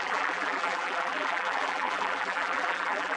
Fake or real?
fake